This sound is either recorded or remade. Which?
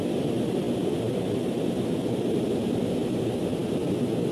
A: recorded